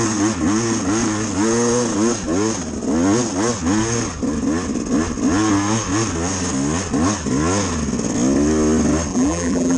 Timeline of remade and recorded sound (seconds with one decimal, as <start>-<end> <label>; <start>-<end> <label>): 0.0-9.1 recorded; 9.1-9.8 remade